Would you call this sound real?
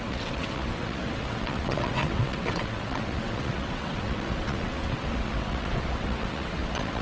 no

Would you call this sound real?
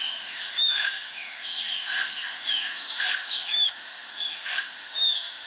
no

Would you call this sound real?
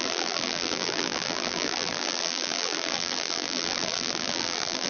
no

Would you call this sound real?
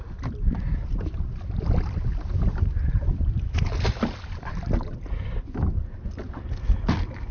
yes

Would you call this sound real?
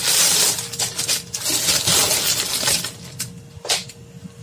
yes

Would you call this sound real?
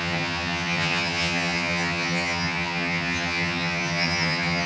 no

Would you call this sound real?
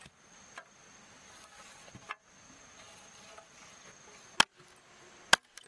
yes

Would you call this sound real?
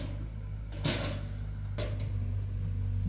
yes